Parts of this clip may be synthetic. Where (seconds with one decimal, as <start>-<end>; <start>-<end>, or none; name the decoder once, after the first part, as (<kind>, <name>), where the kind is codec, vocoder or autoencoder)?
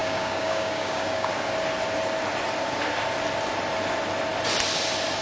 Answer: 0.0-1.3 (codec, DAC)